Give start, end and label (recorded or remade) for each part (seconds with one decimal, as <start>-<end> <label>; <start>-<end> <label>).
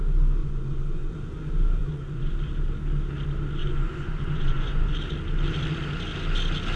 0.0-0.4 recorded; 0.4-1.1 remade; 1.1-1.8 recorded; 1.8-2.3 remade; 2.3-3.6 recorded; 3.6-4.9 remade; 4.9-6.8 recorded